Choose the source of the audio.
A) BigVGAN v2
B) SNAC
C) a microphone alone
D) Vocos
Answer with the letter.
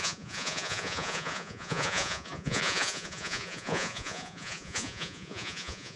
D